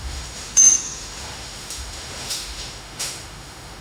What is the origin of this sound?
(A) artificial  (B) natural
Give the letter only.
A